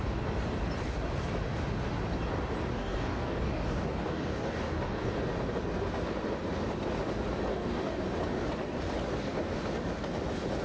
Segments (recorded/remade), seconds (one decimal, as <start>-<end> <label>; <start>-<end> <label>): 0.0-2.7 recorded; 2.7-5.1 remade; 5.1-7.5 recorded; 7.5-8.0 remade; 8.0-10.6 recorded